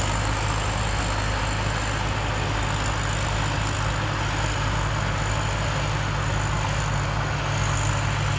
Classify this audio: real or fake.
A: real